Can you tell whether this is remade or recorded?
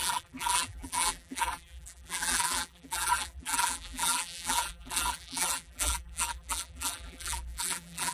remade